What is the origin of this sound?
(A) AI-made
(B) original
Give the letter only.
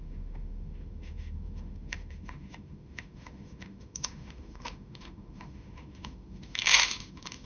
A